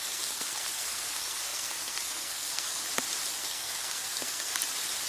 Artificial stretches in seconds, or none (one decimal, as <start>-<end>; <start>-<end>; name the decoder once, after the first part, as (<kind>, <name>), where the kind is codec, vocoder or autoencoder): 0.0-2.8 (codec, SNAC); 3.4-4.5